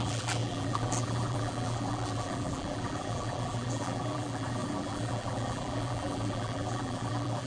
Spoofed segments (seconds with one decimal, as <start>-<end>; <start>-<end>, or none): 0.0-7.5